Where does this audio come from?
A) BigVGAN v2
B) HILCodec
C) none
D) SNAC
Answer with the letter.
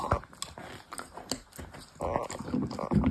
C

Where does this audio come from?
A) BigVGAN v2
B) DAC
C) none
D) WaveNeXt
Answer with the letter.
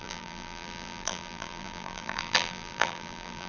A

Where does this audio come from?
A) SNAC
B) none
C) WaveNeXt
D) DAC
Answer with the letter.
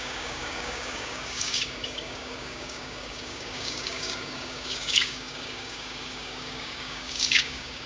D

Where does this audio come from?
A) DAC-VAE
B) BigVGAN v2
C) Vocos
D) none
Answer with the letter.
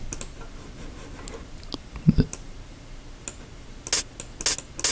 D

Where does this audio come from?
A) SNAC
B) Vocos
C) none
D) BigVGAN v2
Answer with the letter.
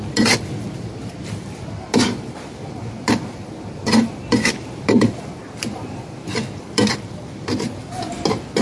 C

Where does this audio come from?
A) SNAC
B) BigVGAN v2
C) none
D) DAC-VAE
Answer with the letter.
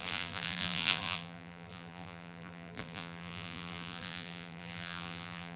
B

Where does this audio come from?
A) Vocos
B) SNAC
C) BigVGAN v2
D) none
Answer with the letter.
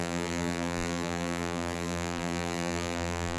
C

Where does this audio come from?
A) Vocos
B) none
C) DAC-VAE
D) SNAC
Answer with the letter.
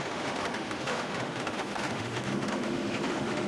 C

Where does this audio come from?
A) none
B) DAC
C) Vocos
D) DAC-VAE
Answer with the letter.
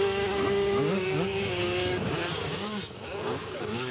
B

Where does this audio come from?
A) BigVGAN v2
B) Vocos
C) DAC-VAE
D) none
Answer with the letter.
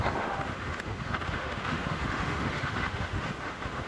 C